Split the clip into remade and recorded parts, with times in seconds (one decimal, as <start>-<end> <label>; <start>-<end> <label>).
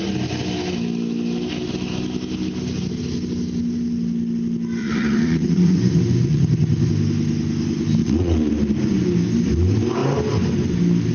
0.0-4.8 recorded; 4.8-6.9 remade; 6.9-8.0 recorded; 8.0-8.5 remade; 8.5-11.1 recorded